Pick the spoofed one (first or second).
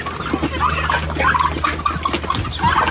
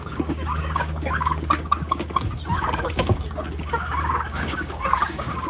second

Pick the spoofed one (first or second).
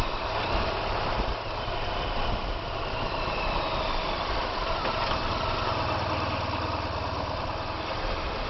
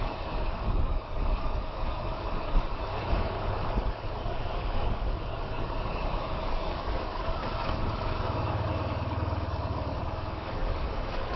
second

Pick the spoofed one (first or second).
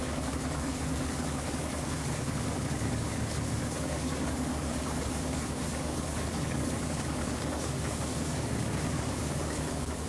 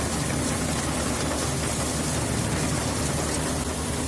first